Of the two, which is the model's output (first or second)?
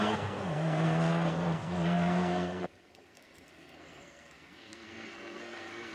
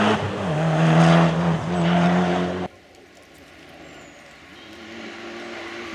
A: first